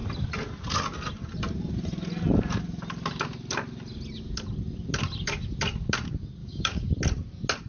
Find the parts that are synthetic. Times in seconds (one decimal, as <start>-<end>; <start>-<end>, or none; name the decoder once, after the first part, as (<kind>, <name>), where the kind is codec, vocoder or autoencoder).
6.4-6.9 (codec, DAC)